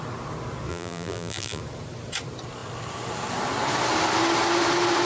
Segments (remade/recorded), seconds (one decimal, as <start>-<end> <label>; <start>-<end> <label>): 0.0-0.7 recorded; 0.7-1.6 remade; 1.6-5.1 recorded